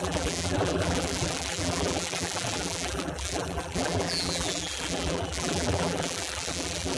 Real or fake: fake